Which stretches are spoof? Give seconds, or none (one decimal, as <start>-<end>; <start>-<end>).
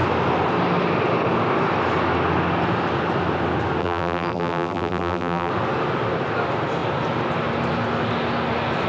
3.8-5.5